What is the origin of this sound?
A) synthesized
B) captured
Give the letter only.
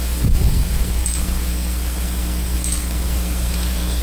A